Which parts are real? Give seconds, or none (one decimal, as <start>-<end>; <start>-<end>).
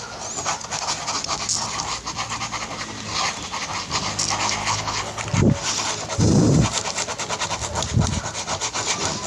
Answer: 0.0-4.6; 5.2-9.3